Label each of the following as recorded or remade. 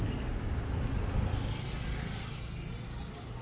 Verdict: recorded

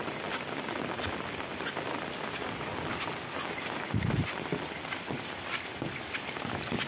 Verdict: recorded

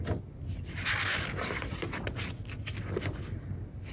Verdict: recorded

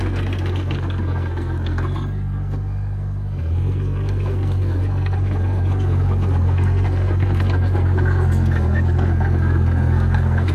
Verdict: remade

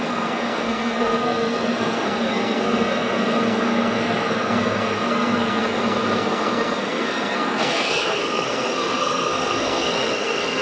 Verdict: remade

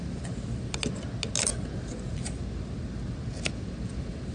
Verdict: recorded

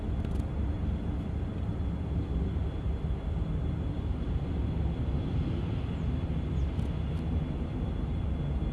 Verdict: recorded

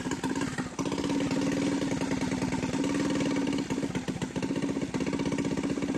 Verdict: recorded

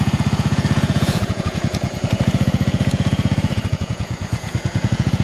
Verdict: remade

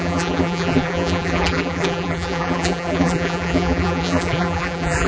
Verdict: remade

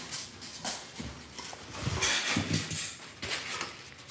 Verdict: recorded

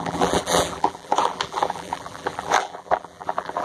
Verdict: remade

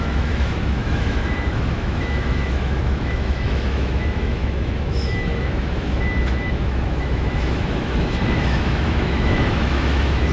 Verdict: remade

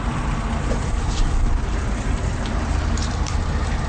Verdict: remade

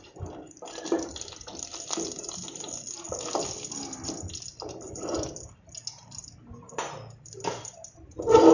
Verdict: recorded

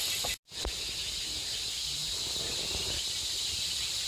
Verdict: recorded